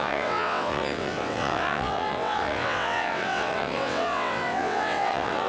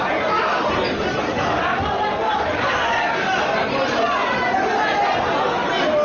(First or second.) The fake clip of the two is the first